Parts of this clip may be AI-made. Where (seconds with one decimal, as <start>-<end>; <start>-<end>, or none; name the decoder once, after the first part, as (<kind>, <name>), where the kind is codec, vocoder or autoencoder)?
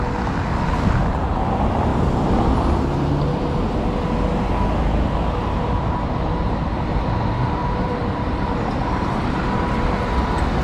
7.6-9.2 (vocoder, BigVGAN v2)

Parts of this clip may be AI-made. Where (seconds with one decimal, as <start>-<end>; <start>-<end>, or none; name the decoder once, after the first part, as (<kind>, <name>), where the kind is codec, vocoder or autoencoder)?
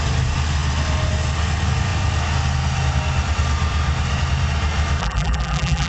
5.0-5.9 (vocoder, BigVGAN v2)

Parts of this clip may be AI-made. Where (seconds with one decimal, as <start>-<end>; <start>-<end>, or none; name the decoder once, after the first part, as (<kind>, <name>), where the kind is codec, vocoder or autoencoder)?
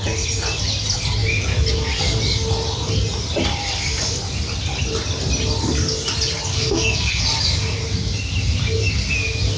6.5-7.2 (codec, SNAC)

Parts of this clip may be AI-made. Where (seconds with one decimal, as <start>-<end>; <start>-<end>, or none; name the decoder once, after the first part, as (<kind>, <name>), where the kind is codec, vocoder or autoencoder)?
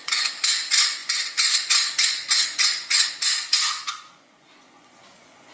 0.0-5.5 (vocoder, Vocos)